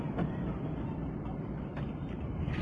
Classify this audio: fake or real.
real